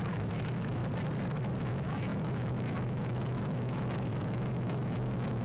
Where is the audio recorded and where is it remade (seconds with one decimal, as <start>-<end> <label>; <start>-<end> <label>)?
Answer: 0.0-0.8 remade; 0.8-1.6 recorded; 1.6-5.4 remade